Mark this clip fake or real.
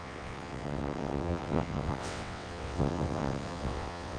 fake